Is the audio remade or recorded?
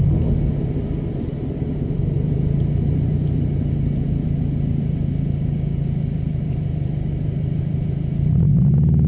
recorded